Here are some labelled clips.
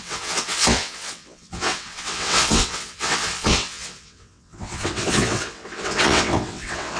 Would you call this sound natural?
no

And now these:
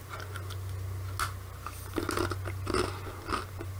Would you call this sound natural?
yes